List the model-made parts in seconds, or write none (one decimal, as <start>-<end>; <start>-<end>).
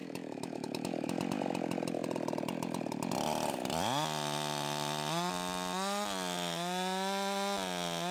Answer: 0.0-1.2